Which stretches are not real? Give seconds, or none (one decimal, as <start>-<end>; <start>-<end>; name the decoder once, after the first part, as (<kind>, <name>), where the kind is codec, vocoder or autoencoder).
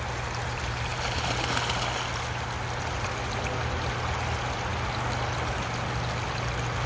none